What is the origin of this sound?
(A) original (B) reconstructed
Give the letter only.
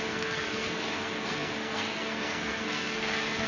B